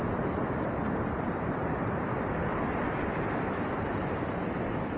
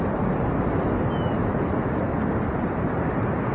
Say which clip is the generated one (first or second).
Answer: first